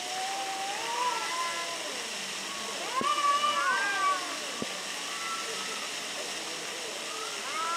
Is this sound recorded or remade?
recorded